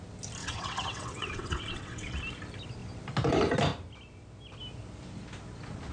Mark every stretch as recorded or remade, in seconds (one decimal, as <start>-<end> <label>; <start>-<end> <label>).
0.0-0.4 recorded; 0.4-2.2 remade; 2.2-5.9 recorded